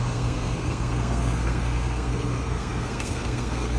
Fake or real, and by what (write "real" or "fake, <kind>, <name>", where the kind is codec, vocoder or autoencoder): fake, codec, SNAC